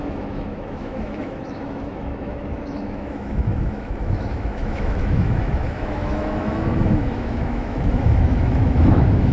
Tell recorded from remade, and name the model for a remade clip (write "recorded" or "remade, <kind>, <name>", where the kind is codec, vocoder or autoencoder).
remade, autoencoder, DAC-VAE